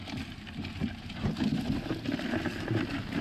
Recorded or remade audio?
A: recorded